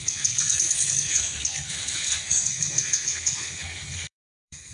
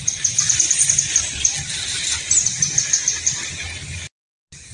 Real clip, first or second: second